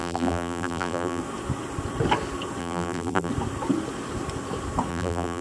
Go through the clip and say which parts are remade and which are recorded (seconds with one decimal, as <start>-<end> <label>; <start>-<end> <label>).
0.0-1.2 remade; 1.2-2.6 recorded; 2.6-3.3 remade; 3.3-4.9 recorded; 4.9-5.4 remade